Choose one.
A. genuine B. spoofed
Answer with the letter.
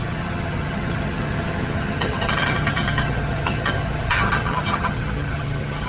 B